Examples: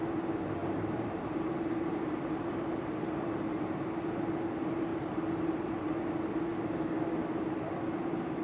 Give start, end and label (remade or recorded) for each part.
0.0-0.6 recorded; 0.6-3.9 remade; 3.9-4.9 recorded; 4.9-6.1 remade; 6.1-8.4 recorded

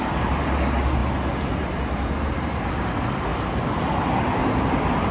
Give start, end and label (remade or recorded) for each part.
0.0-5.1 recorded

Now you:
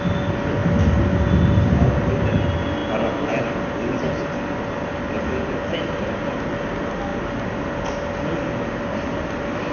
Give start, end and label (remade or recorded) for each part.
0.0-9.7 recorded